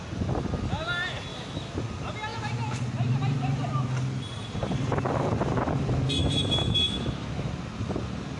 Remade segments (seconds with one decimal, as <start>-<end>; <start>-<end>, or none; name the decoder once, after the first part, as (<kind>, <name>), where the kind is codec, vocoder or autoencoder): 1.3-1.8 (autoencoder, DAC-VAE); 6.2-7.5